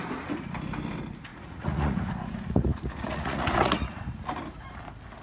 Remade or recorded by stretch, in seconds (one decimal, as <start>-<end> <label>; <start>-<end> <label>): 0.0-1.3 recorded; 1.3-4.0 remade; 4.0-5.2 recorded